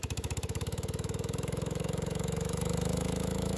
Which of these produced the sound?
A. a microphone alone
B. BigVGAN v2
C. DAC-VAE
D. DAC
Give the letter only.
C